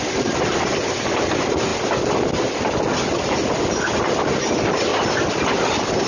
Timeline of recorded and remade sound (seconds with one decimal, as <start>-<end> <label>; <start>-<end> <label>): 0.0-6.1 recorded